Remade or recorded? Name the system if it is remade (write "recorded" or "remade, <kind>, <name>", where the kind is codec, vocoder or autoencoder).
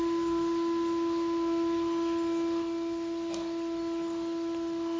recorded